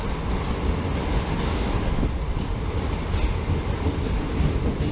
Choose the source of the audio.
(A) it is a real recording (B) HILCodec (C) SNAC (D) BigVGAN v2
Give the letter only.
A